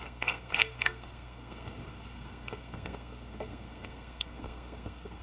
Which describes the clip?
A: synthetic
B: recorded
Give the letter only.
A